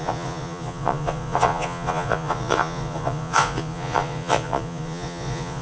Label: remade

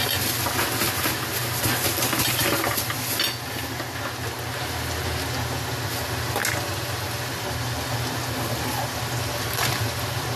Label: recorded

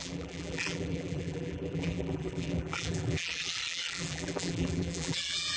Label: remade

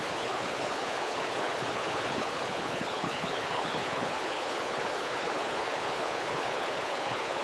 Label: remade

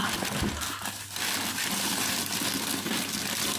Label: recorded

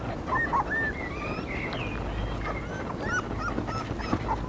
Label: recorded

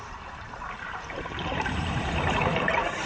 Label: remade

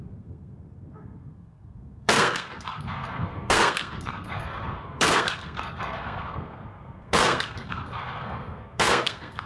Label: remade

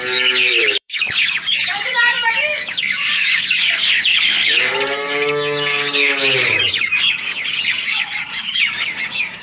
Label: remade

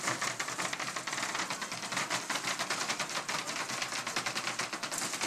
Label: recorded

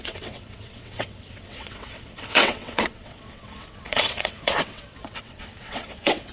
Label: remade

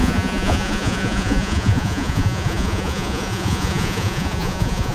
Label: remade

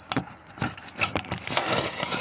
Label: recorded